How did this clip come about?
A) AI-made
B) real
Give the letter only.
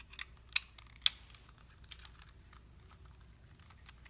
B